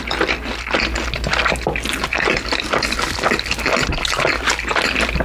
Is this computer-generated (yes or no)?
no